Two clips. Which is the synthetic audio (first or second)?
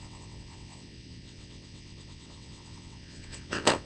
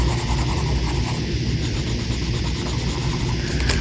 first